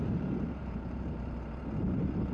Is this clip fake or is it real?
fake